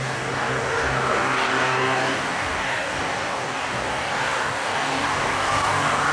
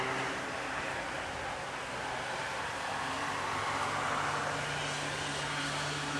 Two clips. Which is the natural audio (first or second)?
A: second